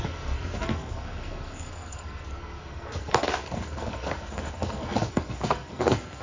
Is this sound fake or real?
fake